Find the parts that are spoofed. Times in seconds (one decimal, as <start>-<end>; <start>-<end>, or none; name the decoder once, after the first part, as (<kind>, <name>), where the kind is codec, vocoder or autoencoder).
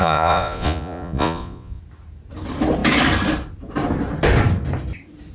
0.0-1.8 (vocoder, Vocos)